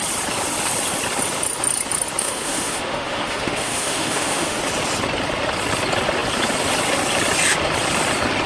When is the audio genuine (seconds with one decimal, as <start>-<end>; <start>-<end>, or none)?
0.0-2.2; 4.6-8.5